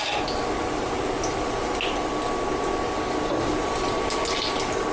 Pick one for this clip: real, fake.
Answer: real